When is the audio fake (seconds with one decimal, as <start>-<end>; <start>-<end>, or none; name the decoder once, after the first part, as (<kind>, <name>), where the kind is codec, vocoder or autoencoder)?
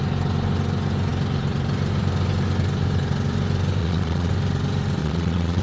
3.8-4.3 (vocoder, Vocos); 5.0-5.6